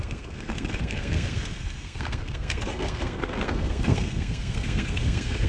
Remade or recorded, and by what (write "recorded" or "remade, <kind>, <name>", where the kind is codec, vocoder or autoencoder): remade, codec, SNAC